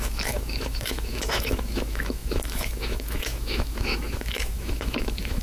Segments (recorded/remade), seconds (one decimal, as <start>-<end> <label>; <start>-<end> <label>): 0.0-5.4 remade